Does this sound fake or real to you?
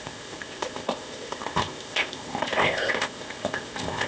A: fake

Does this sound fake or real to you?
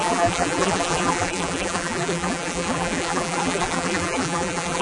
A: fake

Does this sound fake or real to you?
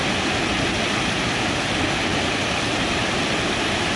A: real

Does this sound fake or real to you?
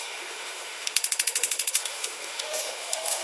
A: fake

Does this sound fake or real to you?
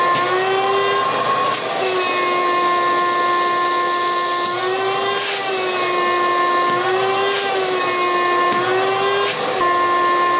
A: real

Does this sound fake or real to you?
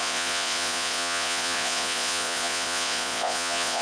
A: fake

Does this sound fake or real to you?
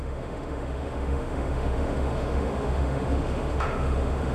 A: fake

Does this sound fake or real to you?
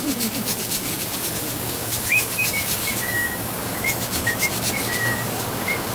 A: fake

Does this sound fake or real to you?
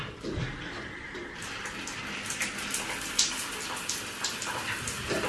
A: real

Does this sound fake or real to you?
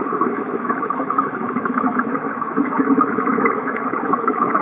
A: fake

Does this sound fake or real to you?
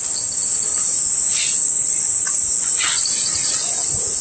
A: real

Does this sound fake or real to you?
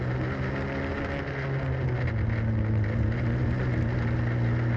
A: real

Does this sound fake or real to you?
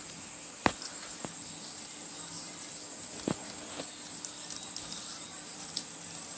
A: real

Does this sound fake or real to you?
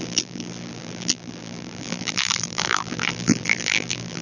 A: fake